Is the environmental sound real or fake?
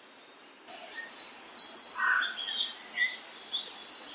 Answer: real